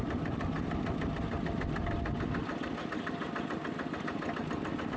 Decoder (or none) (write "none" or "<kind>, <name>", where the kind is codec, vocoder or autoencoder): none